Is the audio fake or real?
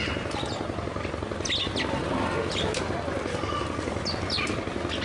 real